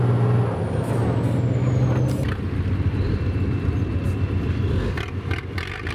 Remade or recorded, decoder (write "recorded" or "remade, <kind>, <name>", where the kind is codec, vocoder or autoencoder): recorded